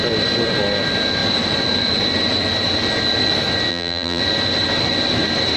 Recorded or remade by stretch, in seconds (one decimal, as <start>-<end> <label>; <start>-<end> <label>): 0.0-3.7 recorded; 3.7-4.2 remade; 4.2-5.6 recorded